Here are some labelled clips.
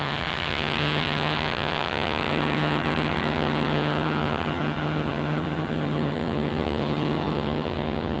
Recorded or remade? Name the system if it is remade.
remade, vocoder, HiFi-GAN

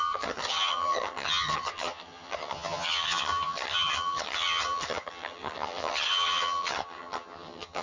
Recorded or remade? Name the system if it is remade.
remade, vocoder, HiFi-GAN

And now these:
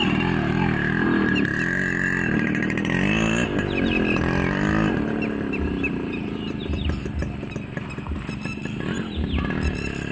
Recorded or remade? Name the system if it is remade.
recorded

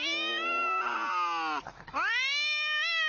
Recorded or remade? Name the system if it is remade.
recorded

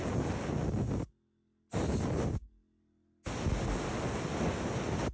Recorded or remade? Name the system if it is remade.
recorded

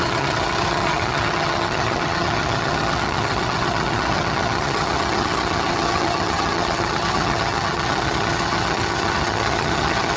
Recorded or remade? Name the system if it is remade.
remade, vocoder, HiFi-GAN